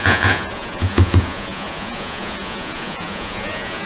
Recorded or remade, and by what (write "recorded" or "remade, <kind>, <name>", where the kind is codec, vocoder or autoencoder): remade, vocoder, Vocos